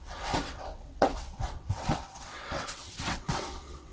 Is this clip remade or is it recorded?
remade